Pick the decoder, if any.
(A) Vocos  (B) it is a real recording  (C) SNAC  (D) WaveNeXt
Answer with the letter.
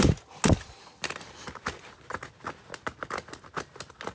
B